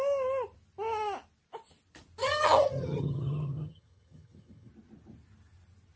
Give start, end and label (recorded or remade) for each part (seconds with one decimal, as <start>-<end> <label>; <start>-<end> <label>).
0.0-2.2 recorded; 2.2-4.7 remade; 4.7-6.0 recorded